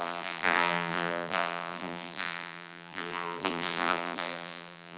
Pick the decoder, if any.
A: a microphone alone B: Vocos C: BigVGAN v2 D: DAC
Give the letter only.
C